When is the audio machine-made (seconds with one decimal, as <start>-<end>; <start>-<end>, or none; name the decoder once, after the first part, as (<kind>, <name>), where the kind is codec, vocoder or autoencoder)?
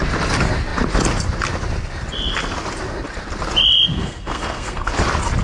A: 3.9-4.9 (codec, SNAC)